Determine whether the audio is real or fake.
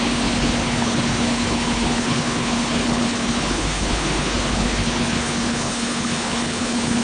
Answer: fake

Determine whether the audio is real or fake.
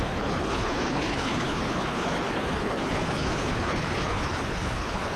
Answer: fake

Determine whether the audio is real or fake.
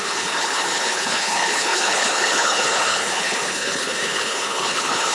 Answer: fake